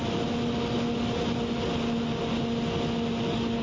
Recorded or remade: recorded